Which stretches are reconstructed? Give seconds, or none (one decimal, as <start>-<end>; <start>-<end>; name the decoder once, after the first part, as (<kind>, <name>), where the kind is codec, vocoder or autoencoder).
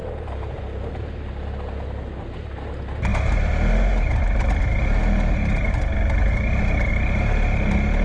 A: 0.0-0.6 (vocoder, BigVGAN v2)